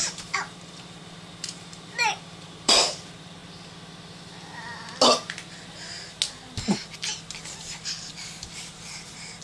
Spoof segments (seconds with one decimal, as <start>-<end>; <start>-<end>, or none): 0.0-3.4; 7.5-9.4